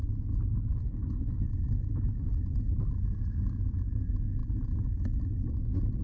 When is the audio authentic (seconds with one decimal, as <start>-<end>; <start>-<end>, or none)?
0.0-0.5; 1.5-6.0